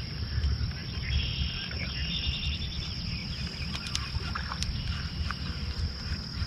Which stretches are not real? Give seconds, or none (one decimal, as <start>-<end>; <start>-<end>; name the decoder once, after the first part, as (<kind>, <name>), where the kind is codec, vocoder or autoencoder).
0.0-3.2 (vocoder, BigVGAN v2)